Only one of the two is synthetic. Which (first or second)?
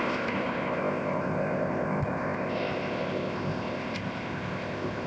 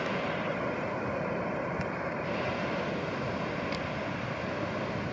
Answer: first